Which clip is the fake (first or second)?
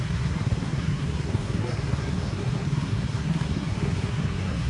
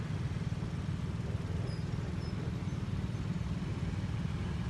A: first